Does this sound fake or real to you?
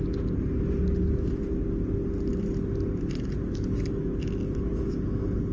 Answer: real